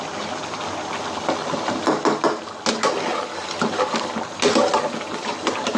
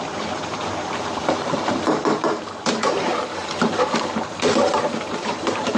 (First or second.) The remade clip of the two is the second